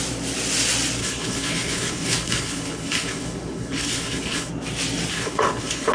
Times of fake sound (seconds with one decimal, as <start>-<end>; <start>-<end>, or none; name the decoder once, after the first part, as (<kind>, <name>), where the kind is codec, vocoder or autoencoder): 1.0-4.5 (codec, HILCodec); 5.1-5.9